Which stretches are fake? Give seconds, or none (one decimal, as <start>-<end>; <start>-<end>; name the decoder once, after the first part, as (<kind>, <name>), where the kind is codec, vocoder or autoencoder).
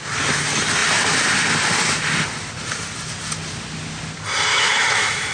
4.5-5.3 (autoencoder, DAC-VAE)